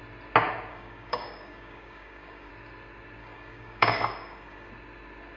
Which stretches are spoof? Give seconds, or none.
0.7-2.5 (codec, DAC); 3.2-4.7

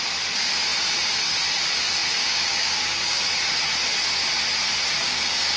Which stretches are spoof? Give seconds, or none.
2.2-3.2 (codec, DAC); 5.0-5.6

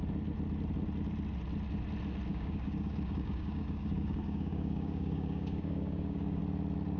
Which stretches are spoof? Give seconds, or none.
2.3-6.4 (codec, DAC)

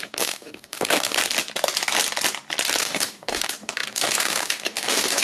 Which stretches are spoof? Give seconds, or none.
0.0-1.2 (codec, DAC); 2.8-5.2

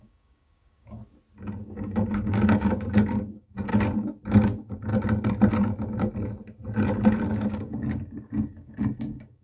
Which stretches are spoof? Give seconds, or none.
0.0-1.0 (codec, DAC); 1.6-3.7; 4.3-4.9; 7.3-9.4

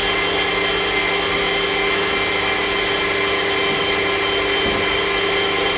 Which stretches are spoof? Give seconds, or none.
none

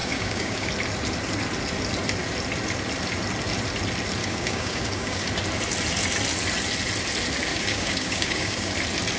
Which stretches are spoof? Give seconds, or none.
0.0-0.7 (codec, DAC); 4.2-5.3; 7.5-8.7